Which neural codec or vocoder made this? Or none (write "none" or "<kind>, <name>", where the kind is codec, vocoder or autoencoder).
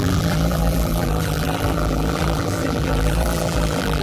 vocoder, BigVGAN v2